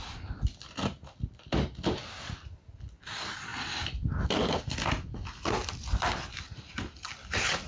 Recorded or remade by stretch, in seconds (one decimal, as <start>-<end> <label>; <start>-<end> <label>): 0.0-7.7 recorded